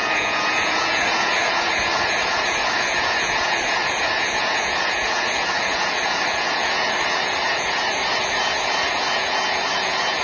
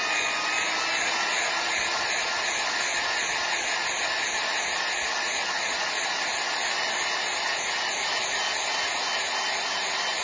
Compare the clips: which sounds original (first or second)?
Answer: second